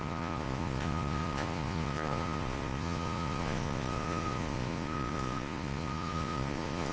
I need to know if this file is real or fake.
fake